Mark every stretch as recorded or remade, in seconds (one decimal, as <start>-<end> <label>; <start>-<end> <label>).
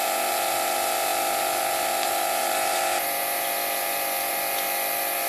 0.0-5.3 remade